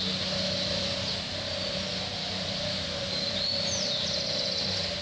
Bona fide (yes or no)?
yes